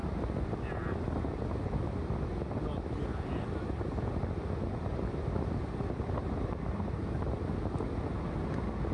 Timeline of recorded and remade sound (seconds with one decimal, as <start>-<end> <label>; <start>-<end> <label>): 0.0-6.2 recorded; 6.2-7.0 remade; 7.0-8.9 recorded